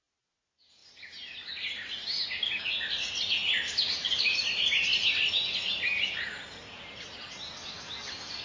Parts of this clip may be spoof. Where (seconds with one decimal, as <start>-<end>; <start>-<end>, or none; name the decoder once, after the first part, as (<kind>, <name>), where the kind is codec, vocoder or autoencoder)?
none